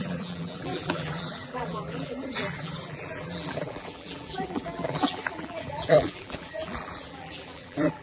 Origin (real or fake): fake